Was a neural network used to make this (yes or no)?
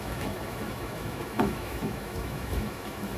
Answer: yes